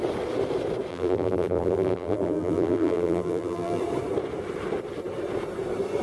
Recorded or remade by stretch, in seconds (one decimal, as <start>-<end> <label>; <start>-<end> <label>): 0.0-0.9 recorded; 0.9-3.8 remade; 3.8-6.0 recorded